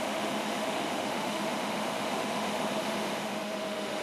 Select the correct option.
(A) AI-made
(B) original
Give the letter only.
A